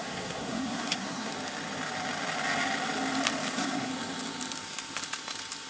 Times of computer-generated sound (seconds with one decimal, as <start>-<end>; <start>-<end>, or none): 0.0-1.3; 3.5-3.9